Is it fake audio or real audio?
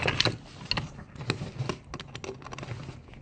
real